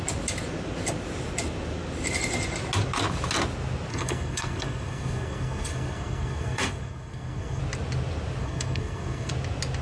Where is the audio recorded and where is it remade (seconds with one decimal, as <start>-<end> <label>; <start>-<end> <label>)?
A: 0.0-3.9 recorded; 3.9-7.6 remade; 7.6-8.4 recorded; 8.4-9.3 remade; 9.3-9.8 recorded